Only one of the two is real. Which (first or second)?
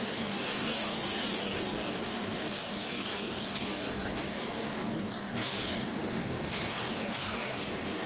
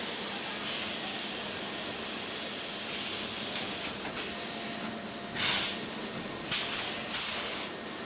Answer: second